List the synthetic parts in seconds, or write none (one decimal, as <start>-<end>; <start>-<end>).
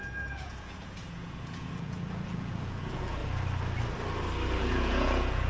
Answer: 0.0-3.2; 4.6-5.5